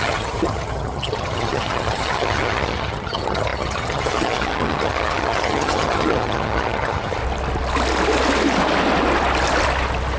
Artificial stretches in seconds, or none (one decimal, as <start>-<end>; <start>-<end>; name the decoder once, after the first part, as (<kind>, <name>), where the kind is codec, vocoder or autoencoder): 0.0-7.2 (vocoder, HiFi-GAN)